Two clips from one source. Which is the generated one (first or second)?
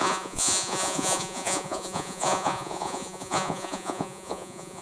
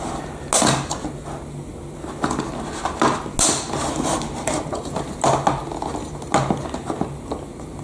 first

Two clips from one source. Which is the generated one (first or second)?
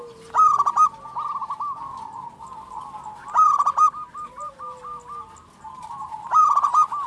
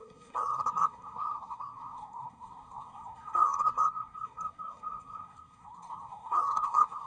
second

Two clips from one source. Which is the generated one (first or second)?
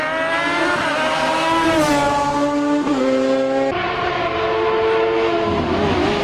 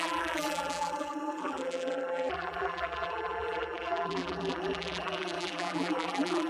second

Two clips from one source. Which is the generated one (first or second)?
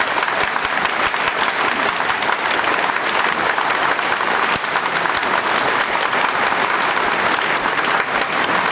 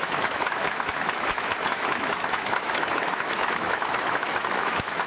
second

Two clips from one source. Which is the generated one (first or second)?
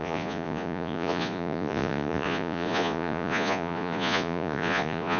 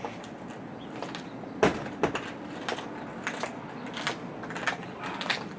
first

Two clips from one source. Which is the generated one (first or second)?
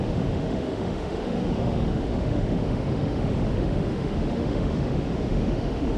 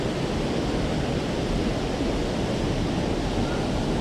first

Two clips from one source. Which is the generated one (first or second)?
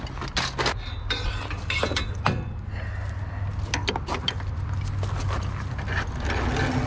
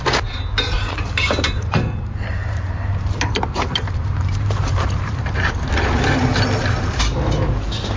second